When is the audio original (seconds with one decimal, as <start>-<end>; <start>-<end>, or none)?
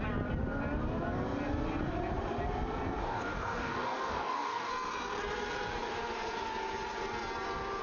0.0-3.0; 4.7-7.8